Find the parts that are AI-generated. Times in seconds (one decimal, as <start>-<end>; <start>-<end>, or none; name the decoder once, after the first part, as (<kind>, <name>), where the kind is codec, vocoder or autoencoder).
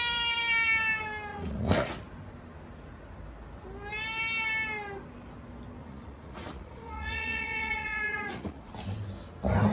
1.3-1.9 (vocoder, Vocos); 5.8-8.7